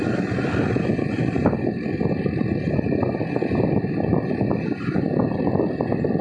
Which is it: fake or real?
real